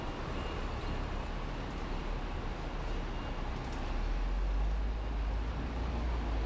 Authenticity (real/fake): real